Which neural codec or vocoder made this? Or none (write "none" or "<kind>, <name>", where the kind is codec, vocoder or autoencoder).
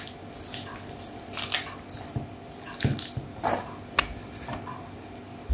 none